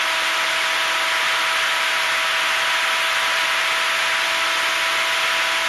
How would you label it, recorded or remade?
recorded